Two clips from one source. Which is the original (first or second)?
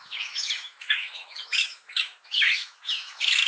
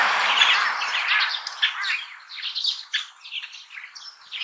second